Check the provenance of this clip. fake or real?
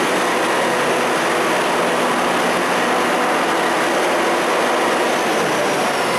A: real